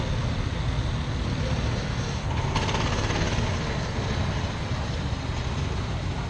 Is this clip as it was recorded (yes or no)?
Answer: yes